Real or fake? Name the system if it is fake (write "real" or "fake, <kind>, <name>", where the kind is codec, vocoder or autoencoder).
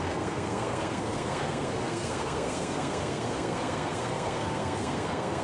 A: fake, codec, SNAC